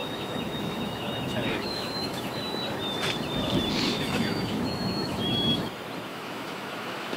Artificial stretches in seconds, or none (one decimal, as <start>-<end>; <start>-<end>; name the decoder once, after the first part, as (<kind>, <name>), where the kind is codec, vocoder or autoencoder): 0.0-2.4 (autoencoder, DAC-VAE); 3.9-5.6; 6.1-7.2